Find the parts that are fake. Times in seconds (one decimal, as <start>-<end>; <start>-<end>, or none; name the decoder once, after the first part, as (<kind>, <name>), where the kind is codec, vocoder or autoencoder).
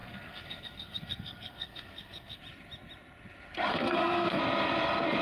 0.0-2.4 (codec, SNAC); 3.7-4.4